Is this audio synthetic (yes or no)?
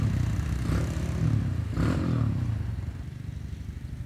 no